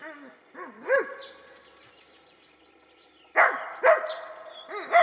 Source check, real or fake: real